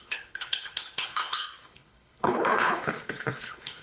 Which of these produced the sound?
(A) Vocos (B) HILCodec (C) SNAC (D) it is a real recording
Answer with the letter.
B